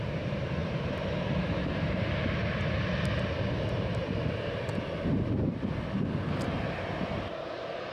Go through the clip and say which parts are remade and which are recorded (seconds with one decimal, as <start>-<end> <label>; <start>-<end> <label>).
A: 0.0-7.9 recorded